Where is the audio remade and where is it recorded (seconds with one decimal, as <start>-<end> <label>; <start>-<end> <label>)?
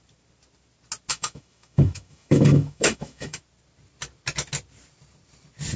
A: 0.0-1.1 recorded; 1.1-3.4 remade; 3.4-5.8 recorded